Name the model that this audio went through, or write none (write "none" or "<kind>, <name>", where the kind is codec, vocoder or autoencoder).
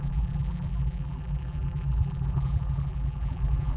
vocoder, BigVGAN v2